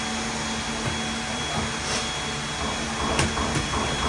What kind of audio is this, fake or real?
real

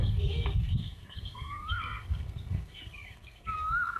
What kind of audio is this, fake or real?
fake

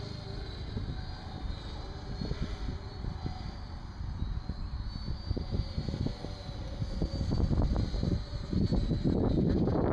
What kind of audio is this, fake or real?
real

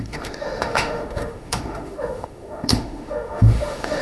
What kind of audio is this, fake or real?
fake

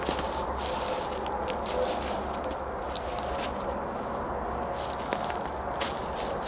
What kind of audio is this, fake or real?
real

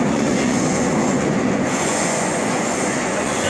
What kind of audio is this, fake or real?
fake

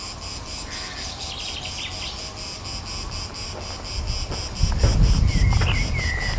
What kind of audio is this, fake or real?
real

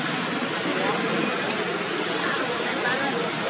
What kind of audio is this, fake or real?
real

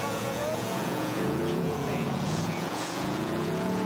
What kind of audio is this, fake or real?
fake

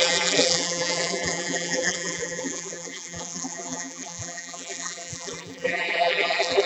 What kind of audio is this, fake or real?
fake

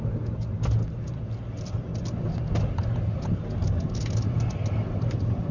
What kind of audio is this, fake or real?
real